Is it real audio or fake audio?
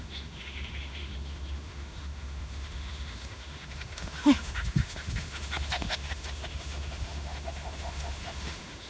fake